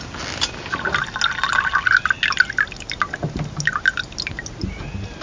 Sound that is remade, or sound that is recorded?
recorded